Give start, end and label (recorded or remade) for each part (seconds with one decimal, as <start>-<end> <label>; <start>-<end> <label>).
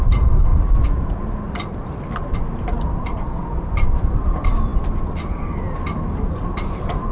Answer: 0.0-7.1 recorded